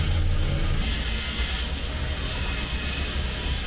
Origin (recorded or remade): recorded